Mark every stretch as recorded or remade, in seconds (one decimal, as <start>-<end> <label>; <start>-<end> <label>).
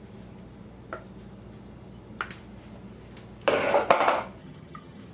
0.0-4.4 recorded; 4.4-5.1 remade